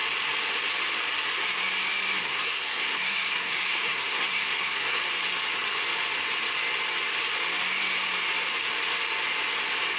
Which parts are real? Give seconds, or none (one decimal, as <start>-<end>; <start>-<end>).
0.0-2.2; 5.0-10.0